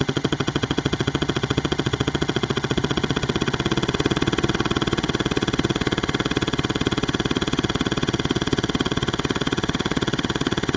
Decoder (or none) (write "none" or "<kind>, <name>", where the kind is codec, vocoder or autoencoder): vocoder, HiFi-GAN